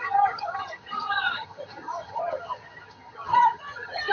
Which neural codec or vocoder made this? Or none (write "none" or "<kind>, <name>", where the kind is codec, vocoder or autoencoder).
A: vocoder, HiFi-GAN